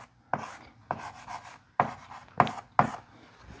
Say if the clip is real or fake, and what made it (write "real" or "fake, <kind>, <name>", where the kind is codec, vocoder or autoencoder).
real